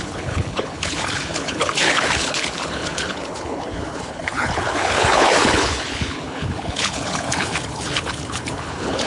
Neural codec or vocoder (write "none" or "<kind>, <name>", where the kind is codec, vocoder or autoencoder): codec, HILCodec